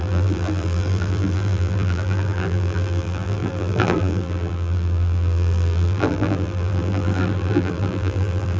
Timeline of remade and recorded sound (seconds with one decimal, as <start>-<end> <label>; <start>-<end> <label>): 0.0-8.6 remade